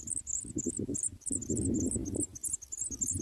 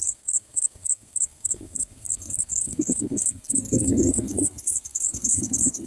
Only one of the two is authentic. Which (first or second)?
first